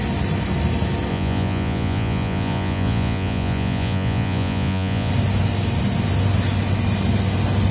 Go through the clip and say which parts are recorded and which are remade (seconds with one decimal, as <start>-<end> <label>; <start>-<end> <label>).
0.0-1.1 recorded; 1.1-5.1 remade; 5.1-7.7 recorded